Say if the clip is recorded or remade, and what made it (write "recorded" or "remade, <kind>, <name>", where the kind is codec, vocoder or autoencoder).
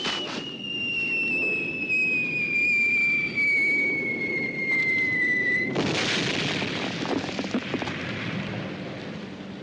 recorded